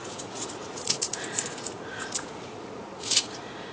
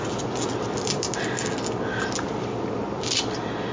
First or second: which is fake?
first